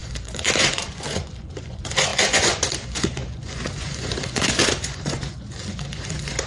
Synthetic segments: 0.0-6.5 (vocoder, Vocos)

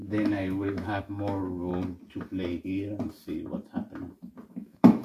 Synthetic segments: 0.0-1.7 (autoencoder, DAC-VAE); 4.5-5.0

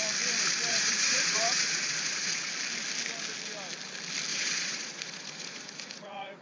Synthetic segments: 0.7-2.5 (vocoder, Vocos); 4.3-6.4